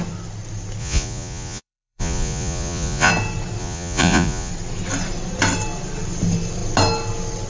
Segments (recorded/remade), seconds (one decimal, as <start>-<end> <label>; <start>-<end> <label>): 0.0-0.8 recorded; 0.8-3.1 remade; 3.1-3.6 recorded; 3.6-4.5 remade; 4.5-7.5 recorded